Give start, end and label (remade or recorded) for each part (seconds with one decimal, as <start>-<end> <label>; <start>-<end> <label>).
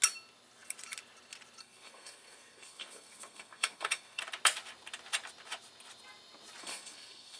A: 0.0-1.6 recorded; 1.6-4.2 remade; 4.2-6.6 recorded; 6.6-7.4 remade